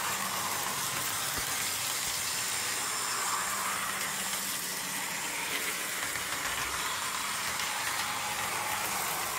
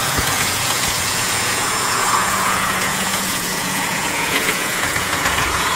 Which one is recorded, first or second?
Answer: first